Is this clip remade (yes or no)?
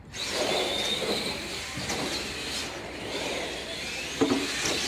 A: no